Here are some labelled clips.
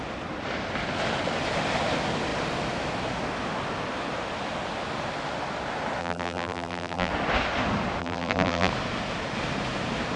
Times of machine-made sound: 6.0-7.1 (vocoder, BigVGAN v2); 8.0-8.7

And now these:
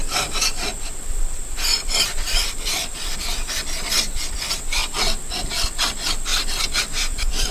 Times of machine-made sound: 0.9-4.8 (vocoder, BigVGAN v2); 5.3-6.3; 6.8-7.5

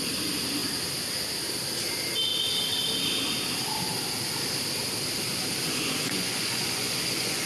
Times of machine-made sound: 5.6-7.5 (vocoder, Vocos)